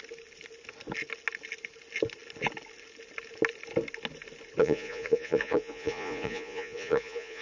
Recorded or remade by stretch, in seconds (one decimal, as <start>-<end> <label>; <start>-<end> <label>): 0.0-4.6 recorded; 4.6-7.4 remade